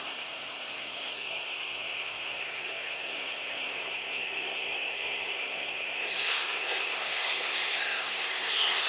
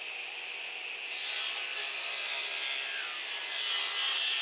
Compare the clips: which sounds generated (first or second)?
first